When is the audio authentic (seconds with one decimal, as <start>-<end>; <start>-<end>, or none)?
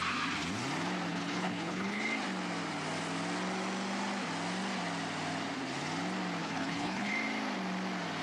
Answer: 0.0-1.1; 2.0-6.4; 7.1-8.2